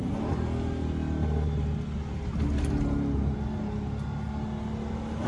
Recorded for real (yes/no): yes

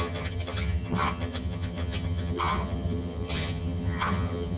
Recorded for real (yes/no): no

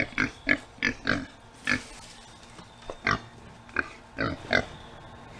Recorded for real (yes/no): yes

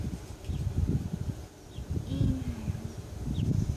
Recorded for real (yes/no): yes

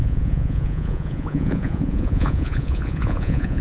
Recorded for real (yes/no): no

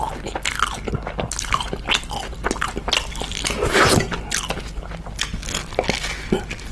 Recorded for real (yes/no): yes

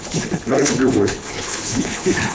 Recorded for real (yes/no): no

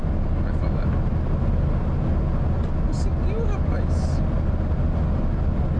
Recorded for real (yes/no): yes